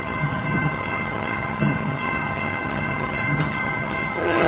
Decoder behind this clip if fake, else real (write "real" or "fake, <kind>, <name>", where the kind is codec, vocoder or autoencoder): fake, vocoder, HiFi-GAN